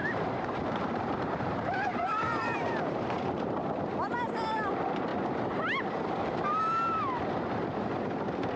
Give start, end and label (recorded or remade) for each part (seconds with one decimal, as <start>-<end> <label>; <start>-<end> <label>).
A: 0.0-3.8 remade; 3.8-8.6 recorded